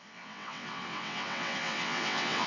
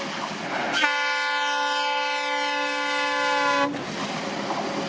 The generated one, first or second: first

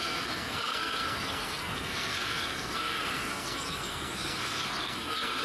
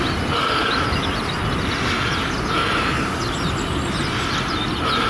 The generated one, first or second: first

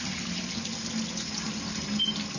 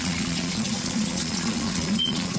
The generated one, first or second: second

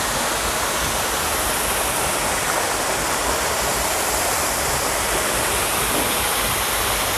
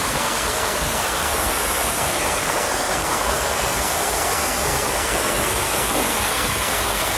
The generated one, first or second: second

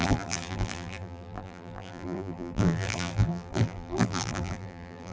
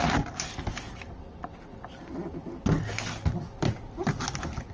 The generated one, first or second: first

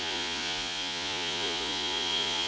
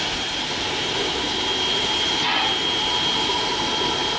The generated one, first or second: first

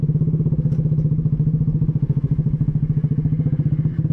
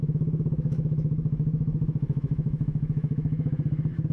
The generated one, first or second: second